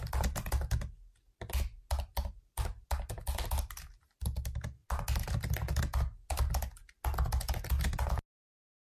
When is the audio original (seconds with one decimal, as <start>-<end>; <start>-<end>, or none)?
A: 0.0-9.0

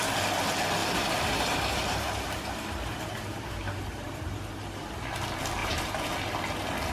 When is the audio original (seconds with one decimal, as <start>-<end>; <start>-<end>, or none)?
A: 0.0-0.8; 4.9-5.6; 6.1-6.9

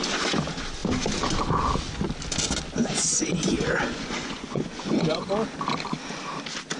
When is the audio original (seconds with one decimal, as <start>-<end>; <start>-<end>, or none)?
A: 0.0-2.8; 5.3-6.8

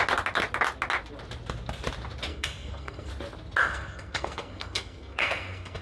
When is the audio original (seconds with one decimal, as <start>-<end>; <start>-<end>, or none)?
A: 0.0-2.3; 3.1-3.6

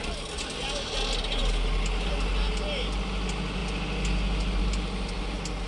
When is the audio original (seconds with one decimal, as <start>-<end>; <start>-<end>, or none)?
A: 0.0-5.7

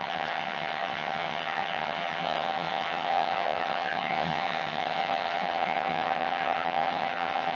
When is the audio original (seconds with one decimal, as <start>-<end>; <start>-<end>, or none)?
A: none

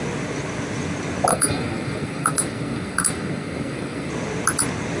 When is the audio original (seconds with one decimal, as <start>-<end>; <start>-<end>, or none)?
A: 0.0-1.3; 4.1-5.0

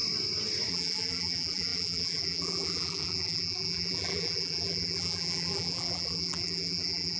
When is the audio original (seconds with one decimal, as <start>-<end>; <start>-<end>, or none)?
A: 0.0-0.7